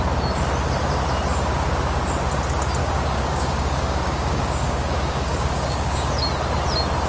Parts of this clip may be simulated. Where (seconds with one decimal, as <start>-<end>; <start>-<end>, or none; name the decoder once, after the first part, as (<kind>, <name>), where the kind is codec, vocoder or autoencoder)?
2.8-6.1 (codec, DAC)